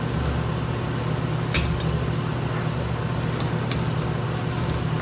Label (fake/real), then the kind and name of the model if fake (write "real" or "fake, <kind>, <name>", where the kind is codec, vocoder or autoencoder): real